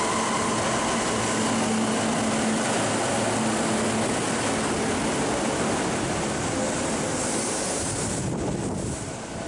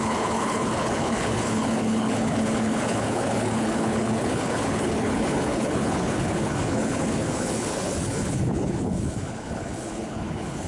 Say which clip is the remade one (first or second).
second